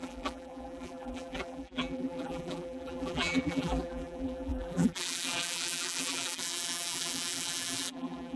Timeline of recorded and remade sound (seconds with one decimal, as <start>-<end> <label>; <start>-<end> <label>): 0.0-8.4 remade